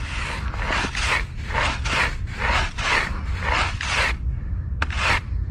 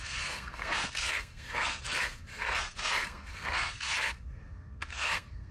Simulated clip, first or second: second